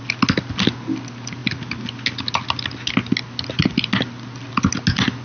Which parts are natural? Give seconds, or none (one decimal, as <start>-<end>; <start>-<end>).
0.0-5.2